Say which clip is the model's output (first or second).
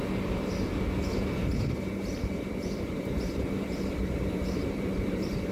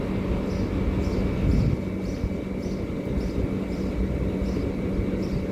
first